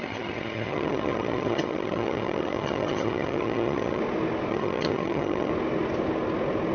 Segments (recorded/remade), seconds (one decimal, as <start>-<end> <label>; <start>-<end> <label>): 0.0-4.0 remade; 4.0-4.5 recorded; 4.5-5.5 remade; 5.5-6.7 recorded